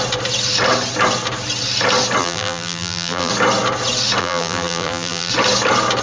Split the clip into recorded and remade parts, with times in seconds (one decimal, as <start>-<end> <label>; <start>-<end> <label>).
0.0-2.2 recorded; 2.2-3.3 remade; 3.3-4.2 recorded; 4.2-5.3 remade; 5.3-6.0 recorded